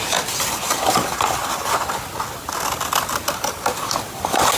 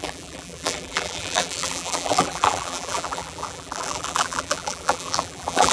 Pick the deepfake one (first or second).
second